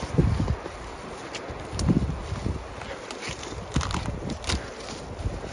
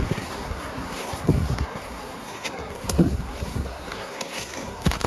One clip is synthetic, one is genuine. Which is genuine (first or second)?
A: first